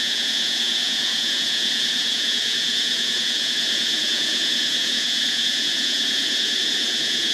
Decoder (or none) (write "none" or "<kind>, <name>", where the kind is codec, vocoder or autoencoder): vocoder, Vocos